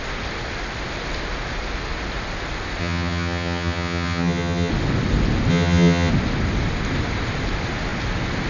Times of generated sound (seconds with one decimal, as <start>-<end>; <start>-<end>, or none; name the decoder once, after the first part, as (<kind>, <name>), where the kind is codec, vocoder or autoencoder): 2.8-4.7 (vocoder, HiFi-GAN); 5.5-6.1